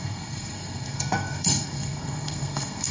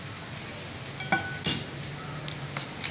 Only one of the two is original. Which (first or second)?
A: second